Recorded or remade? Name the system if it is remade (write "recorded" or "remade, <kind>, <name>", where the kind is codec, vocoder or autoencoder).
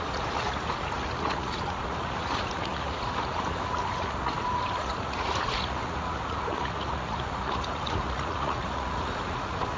remade, vocoder, Vocos